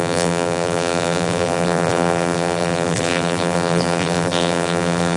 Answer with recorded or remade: remade